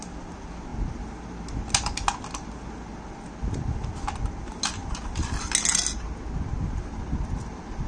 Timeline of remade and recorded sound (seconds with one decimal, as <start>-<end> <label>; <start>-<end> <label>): 0.0-7.9 recorded